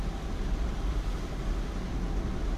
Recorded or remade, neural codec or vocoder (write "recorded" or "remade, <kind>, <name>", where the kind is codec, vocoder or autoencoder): recorded